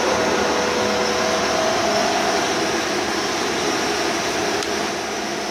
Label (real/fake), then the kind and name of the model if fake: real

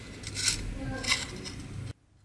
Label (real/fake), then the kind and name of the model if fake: real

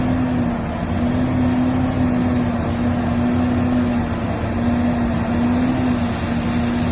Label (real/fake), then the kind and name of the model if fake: real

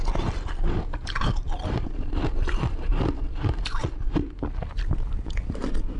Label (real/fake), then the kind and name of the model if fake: real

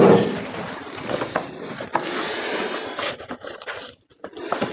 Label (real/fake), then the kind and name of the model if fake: real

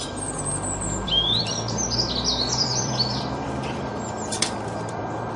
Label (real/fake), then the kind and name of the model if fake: fake, vocoder, BigVGAN v2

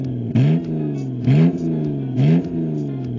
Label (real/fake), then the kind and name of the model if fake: real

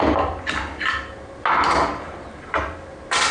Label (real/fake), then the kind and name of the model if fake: real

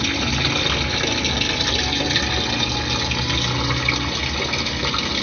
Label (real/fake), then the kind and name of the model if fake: real